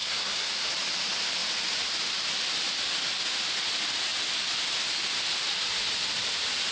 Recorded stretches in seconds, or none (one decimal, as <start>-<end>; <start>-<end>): 0.5-6.7